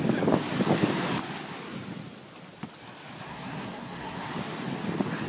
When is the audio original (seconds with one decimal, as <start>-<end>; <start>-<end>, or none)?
0.0-3.3; 4.3-5.3